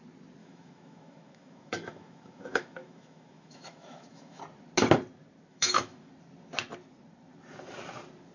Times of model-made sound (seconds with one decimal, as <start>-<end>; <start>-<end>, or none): 0.4-4.4; 5.5-6.1